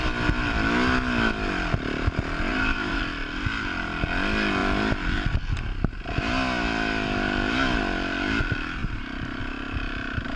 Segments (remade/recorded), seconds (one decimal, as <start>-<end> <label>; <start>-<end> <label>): 0.0-2.5 recorded; 2.5-3.0 remade; 3.0-8.8 recorded; 8.8-9.4 remade; 9.4-10.4 recorded